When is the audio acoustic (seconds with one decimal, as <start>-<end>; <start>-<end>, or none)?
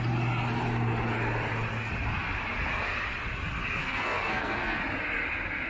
0.0-3.8; 4.8-5.7